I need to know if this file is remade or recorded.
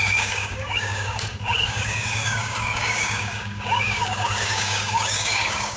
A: remade